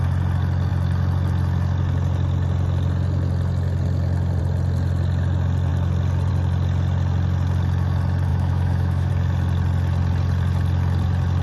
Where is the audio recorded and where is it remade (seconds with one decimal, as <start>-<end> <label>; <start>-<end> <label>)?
0.0-8.3 recorded; 8.3-9.1 remade; 9.1-11.4 recorded